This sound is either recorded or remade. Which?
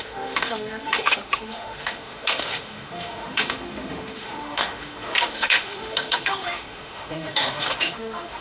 remade